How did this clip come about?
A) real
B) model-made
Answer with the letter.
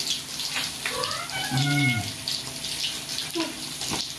A